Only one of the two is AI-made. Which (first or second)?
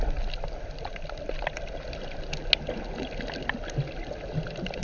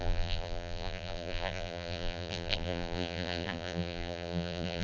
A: second